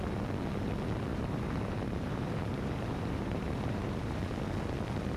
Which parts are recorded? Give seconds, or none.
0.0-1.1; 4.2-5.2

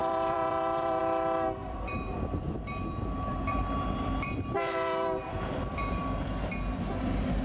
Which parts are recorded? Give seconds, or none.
1.0-1.6; 6.0-7.4